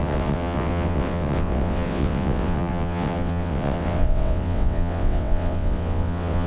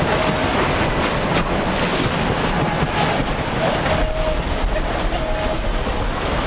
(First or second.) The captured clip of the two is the second